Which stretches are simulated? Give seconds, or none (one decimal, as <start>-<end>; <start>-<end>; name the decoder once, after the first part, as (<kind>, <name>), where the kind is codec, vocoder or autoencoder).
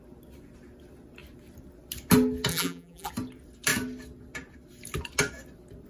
2.5-3.1 (vocoder, BigVGAN v2)